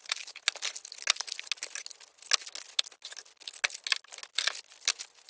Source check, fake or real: real